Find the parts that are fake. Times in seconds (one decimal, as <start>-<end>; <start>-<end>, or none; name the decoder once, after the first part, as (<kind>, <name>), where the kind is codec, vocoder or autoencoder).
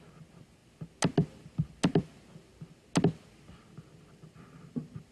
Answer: none